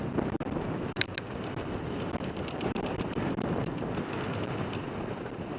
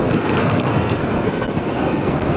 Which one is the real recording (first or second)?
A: first